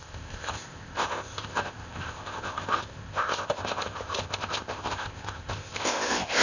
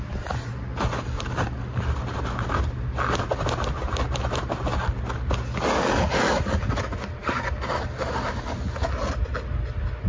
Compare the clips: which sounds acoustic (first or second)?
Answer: second